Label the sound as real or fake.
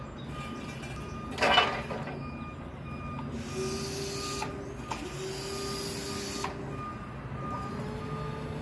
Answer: real